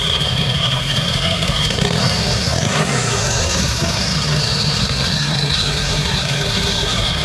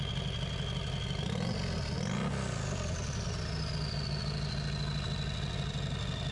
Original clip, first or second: second